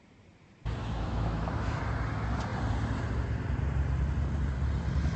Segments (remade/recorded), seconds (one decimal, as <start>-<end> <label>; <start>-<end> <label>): 0.0-0.8 recorded; 0.8-1.8 remade; 1.8-5.2 recorded